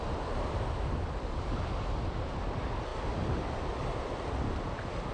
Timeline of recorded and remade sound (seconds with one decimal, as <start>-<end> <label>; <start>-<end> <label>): 0.0-5.1 recorded